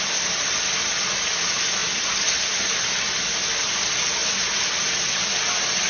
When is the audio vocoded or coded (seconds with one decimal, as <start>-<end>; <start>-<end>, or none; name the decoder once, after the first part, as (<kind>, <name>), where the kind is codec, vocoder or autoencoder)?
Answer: 1.8-3.2 (vocoder, BigVGAN v2)